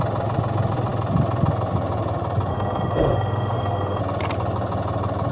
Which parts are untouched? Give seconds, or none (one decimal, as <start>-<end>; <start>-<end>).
0.0-2.5; 4.0-5.3